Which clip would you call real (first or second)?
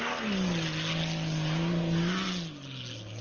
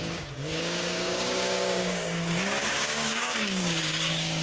first